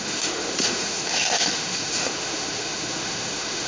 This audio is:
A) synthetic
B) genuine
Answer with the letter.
A